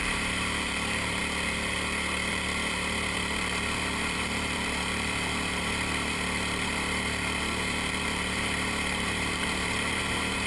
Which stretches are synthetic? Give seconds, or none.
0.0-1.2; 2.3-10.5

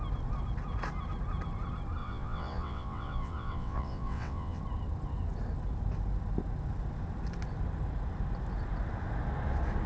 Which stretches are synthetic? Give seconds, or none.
2.0-4.6

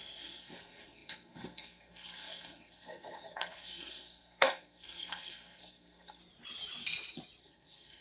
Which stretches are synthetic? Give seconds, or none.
0.0-6.2; 7.4-8.0